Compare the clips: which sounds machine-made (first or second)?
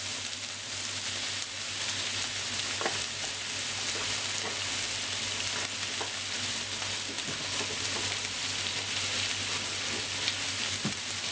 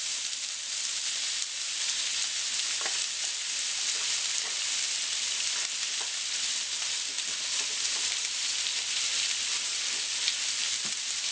second